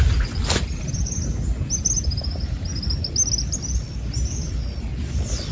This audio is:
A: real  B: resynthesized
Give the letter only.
A